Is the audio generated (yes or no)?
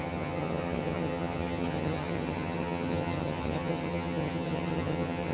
yes